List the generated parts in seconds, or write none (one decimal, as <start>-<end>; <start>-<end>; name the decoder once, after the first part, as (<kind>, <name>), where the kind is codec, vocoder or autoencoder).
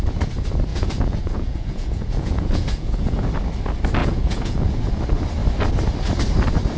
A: 0.7-3.3 (vocoder, Vocos); 4.0-4.9